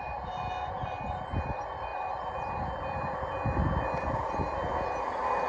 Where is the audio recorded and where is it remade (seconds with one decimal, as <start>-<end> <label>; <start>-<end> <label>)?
0.0-5.5 recorded